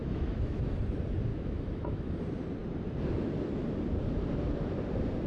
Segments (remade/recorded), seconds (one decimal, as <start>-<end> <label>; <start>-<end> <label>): 0.0-0.7 remade; 0.7-1.3 recorded; 1.3-2.1 remade; 2.1-5.3 recorded